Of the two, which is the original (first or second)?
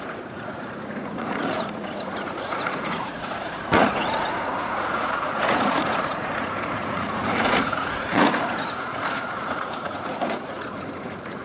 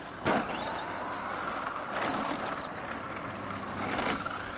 second